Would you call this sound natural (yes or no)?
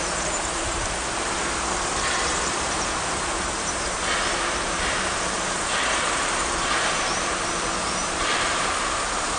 no